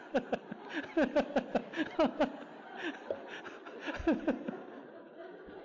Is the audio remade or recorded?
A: recorded